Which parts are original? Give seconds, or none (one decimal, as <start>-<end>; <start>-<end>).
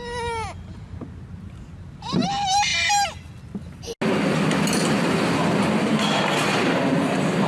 0.0-7.5